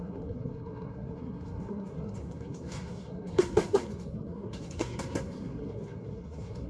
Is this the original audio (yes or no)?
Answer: no